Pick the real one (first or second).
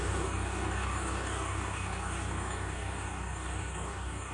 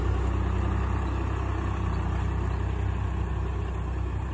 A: second